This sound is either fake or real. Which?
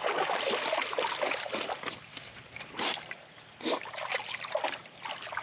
real